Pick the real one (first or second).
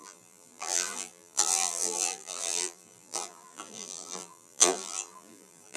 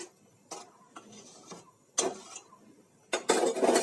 second